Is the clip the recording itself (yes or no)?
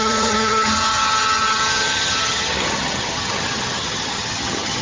no